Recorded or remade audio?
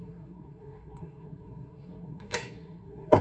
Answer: remade